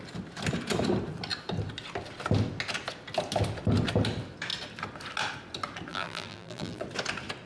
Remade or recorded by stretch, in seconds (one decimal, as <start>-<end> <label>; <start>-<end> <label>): 0.0-5.9 recorded; 5.9-6.8 remade; 6.8-7.5 recorded